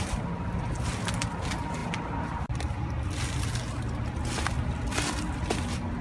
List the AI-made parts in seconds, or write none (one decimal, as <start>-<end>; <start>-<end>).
1.8-2.4